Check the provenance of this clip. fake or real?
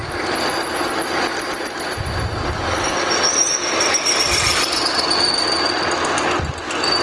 real